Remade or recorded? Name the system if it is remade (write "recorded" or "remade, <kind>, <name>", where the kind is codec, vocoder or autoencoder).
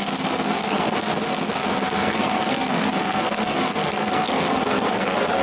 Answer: remade, codec, SNAC